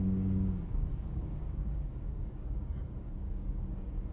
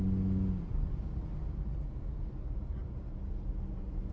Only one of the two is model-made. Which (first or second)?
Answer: first